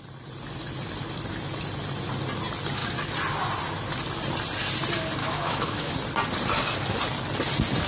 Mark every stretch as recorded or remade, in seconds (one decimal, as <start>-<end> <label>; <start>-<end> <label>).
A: 0.0-5.2 recorded; 5.2-5.9 remade; 5.9-7.9 recorded